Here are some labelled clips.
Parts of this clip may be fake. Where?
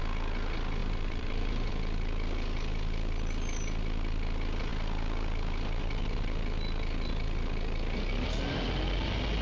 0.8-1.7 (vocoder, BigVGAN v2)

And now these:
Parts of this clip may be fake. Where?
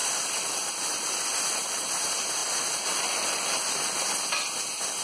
0.0-0.7 (vocoder, BigVGAN v2)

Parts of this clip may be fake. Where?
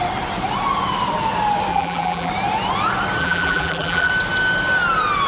1.7-2.3 (vocoder, BigVGAN v2); 3.2-4.1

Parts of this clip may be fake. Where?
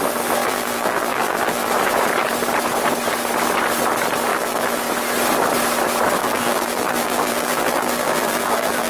0.4-1.7 (vocoder, BigVGAN v2); 4.3-4.8; 6.2-8.9